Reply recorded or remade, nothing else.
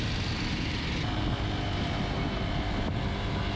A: recorded